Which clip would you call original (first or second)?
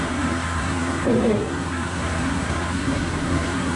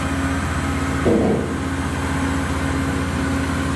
second